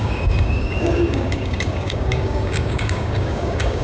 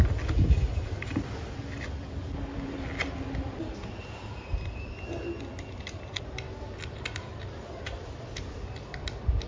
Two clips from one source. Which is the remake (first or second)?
first